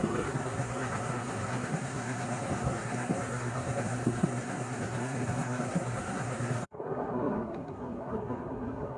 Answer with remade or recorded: remade